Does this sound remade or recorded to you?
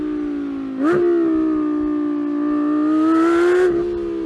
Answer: recorded